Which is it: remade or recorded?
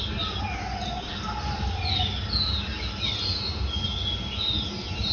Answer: recorded